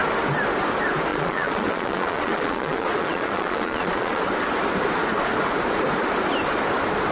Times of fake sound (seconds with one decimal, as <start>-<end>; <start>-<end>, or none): 1.1-4.2